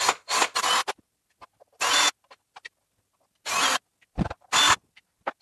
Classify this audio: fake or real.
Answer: real